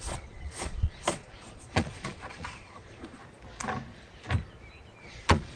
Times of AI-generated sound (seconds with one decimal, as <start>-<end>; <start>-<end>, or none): 0.0-3.2; 5.0-5.6